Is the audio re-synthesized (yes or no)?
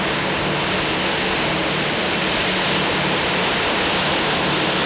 no